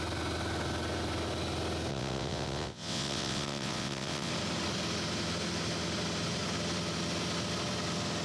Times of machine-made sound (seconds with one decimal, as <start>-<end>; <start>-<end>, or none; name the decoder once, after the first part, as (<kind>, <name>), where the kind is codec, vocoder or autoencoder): 1.9-4.3 (vocoder, WaveNeXt)